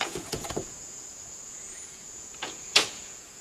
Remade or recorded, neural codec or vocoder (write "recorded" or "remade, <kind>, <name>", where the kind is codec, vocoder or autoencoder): remade, vocoder, Vocos